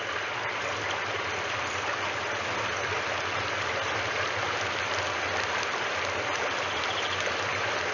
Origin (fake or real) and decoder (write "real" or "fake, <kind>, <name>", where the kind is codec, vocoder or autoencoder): real